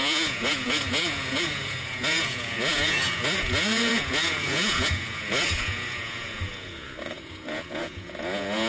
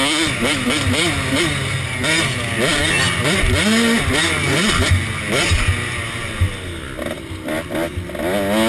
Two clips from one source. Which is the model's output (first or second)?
first